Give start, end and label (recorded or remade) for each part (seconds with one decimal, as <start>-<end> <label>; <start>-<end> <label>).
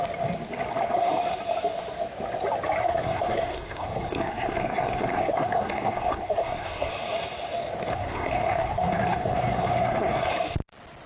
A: 0.0-2.8 recorded; 2.8-6.9 remade; 6.9-7.9 recorded; 7.9-10.3 remade; 10.3-11.1 recorded